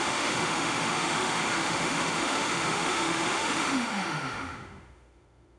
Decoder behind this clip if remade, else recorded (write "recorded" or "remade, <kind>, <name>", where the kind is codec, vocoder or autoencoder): remade, autoencoder, DAC-VAE